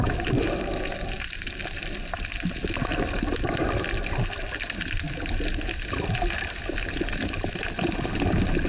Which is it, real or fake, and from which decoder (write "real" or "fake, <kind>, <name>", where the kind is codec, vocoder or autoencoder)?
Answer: real